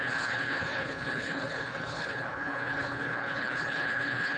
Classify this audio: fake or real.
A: fake